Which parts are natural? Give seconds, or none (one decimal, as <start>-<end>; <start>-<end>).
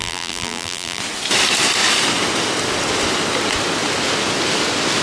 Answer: 1.0-5.0